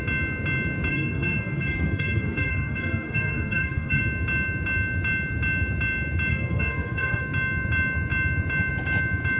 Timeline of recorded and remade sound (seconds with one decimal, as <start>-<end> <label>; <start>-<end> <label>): 0.0-0.9 recorded; 0.9-4.0 remade; 4.0-6.3 recorded; 6.3-7.2 remade; 7.2-9.4 recorded